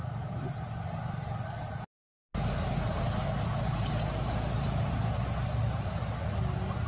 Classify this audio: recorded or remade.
recorded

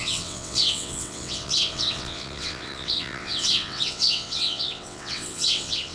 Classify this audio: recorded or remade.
remade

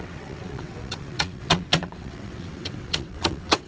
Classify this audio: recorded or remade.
remade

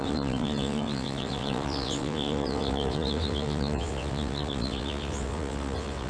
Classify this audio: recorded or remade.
remade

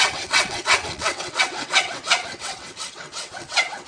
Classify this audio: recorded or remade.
remade